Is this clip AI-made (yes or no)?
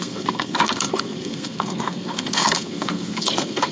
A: yes